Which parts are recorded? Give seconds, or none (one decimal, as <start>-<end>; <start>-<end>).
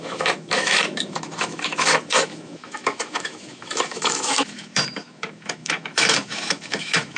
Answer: none